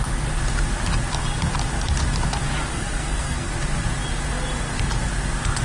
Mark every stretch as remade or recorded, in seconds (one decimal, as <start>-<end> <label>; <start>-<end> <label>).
0.0-2.7 recorded; 2.7-3.5 remade; 3.5-5.6 recorded